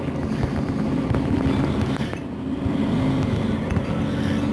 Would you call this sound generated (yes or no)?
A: no